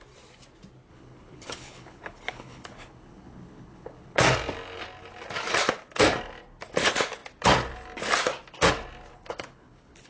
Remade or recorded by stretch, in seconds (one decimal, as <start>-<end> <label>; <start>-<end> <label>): 0.0-0.9 recorded; 0.9-4.2 remade; 4.2-9.1 recorded; 9.1-10.1 remade